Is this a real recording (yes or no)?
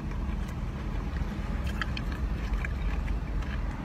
yes